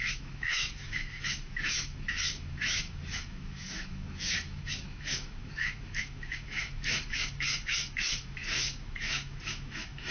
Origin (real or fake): fake